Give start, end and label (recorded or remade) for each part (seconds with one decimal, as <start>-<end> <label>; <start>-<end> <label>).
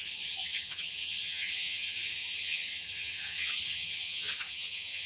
0.0-5.1 remade